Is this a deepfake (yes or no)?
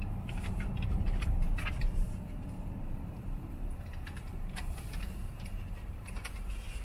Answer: yes